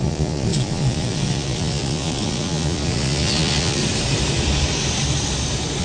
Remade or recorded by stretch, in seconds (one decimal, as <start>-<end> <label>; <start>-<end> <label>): 0.0-3.8 remade; 3.8-5.8 recorded